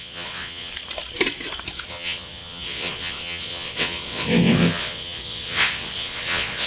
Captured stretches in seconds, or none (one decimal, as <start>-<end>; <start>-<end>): 0.7-1.9